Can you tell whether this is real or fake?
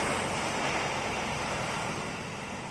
real